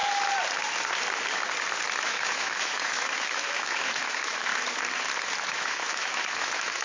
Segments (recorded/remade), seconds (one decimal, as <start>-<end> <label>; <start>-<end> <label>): 0.0-2.0 recorded; 2.0-4.5 remade; 4.5-5.5 recorded; 5.5-6.8 remade